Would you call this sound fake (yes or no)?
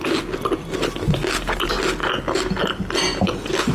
no